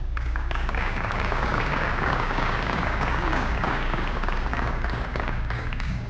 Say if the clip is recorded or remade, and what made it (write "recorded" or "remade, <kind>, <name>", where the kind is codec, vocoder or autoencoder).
remade, codec, DAC